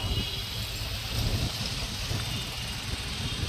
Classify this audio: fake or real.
real